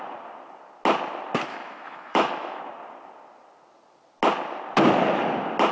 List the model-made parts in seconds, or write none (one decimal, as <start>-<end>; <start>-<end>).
1.5-2.6